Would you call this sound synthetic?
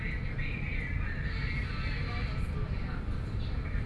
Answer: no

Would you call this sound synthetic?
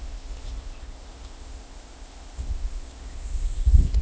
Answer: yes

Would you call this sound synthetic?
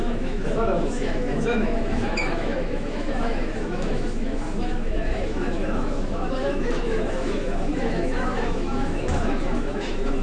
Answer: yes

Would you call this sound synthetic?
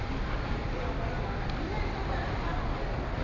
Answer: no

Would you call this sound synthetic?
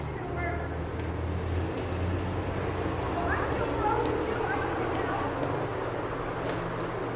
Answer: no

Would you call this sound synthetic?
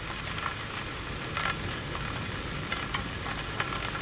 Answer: no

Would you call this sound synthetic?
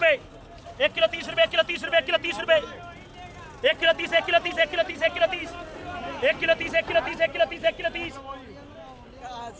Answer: no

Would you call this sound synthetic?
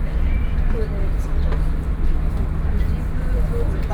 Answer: no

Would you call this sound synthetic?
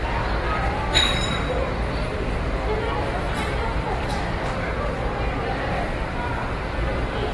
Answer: yes